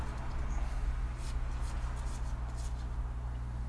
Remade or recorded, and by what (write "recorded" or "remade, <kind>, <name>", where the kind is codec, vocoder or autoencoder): recorded